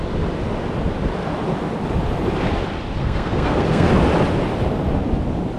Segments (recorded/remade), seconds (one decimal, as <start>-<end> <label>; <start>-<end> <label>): 0.0-3.0 recorded; 3.0-3.9 remade; 3.9-5.6 recorded